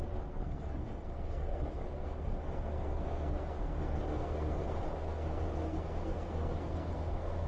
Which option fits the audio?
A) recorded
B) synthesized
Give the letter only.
B